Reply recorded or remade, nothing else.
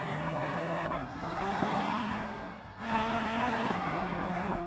remade